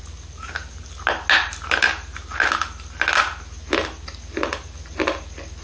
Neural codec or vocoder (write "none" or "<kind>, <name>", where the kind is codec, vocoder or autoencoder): none